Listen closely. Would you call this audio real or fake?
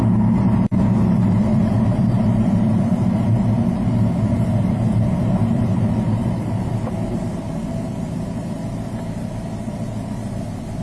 real